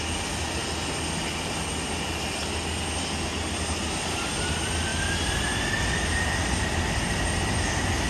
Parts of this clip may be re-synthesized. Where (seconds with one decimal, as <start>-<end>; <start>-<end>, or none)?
none